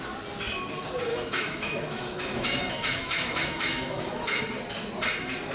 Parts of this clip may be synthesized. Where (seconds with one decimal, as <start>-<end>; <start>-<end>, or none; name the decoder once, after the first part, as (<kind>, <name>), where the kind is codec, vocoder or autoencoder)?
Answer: 1.1-4.4 (autoencoder, DAC-VAE)